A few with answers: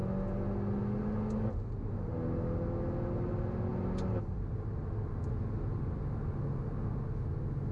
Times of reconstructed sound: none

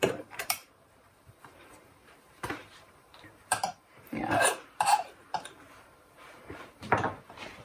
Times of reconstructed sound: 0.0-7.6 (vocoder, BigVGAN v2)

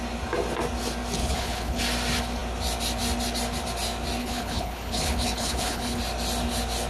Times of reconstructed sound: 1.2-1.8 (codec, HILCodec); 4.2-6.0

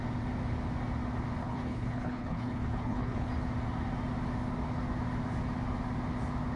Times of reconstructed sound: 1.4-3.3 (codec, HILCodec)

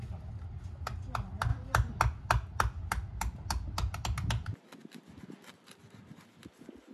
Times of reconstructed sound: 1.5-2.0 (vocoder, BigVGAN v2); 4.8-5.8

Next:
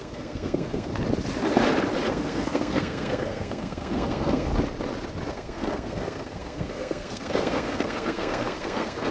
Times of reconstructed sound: 0.0-0.9 (codec, SNAC); 2.1-4.5; 5.3-9.1